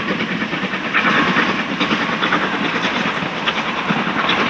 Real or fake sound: real